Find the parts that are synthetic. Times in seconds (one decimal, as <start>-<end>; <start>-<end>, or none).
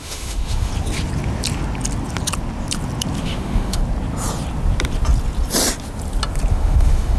0.0-0.7; 3.2-3.8; 6.5-7.2